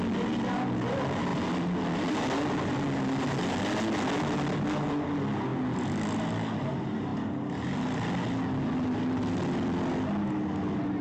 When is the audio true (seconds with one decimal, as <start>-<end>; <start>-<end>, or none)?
0.0-11.0